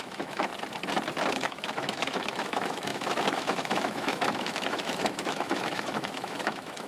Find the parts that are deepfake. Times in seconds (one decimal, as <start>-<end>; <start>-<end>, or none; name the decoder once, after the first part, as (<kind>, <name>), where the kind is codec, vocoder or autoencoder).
0.0-0.5 (autoencoder, DAC-VAE); 1.3-6.9